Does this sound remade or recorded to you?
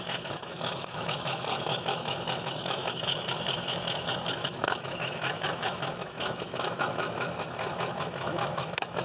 remade